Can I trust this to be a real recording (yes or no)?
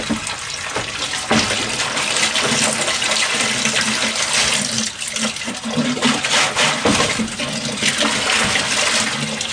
yes